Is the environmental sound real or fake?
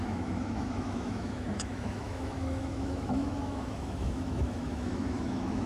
fake